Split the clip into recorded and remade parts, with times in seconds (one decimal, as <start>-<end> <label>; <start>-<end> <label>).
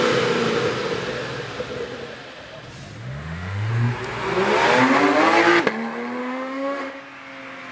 0.0-3.0 recorded; 3.0-3.7 remade; 3.7-6.2 recorded; 6.2-7.0 remade; 7.0-7.7 recorded